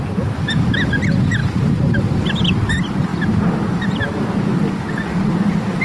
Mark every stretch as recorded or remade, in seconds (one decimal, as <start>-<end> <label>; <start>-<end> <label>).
0.0-5.8 recorded